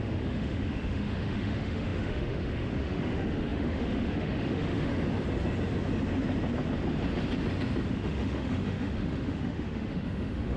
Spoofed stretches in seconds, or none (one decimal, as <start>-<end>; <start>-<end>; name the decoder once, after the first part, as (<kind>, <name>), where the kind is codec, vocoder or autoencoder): 0.0-4.9 (autoencoder, DAC-VAE); 7.9-10.6